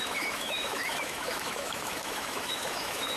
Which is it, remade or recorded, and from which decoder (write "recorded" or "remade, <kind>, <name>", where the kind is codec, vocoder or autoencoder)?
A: remade, autoencoder, DAC-VAE